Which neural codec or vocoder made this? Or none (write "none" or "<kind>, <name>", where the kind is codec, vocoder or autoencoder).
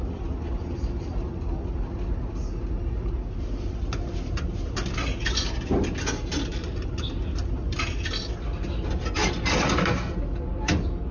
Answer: none